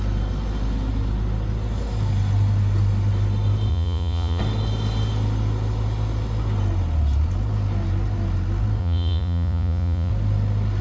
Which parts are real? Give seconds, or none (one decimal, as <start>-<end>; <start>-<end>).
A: 0.0-3.7; 4.4-8.8; 10.1-10.8